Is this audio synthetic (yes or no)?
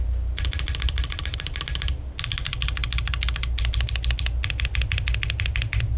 no